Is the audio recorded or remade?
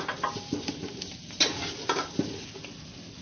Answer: recorded